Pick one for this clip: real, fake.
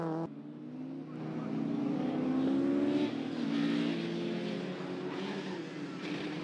real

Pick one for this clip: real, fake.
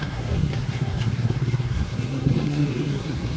fake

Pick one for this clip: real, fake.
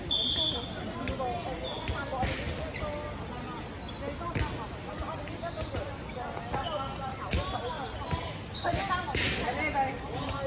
real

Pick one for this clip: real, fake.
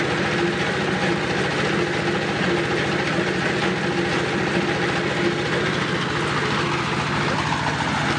real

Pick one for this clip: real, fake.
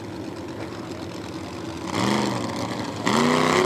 real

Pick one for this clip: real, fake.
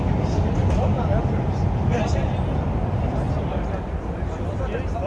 real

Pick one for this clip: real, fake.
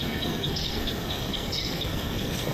fake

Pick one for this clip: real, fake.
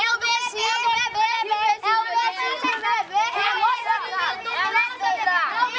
real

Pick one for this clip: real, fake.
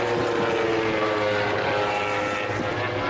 real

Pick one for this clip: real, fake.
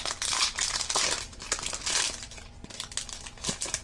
real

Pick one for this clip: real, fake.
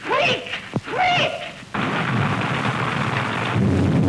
real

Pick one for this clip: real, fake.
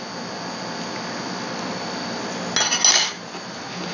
real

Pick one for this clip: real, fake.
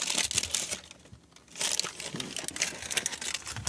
real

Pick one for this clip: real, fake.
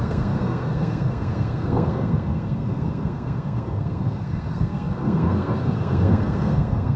fake